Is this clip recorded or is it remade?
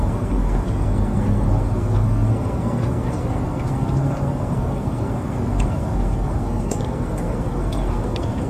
remade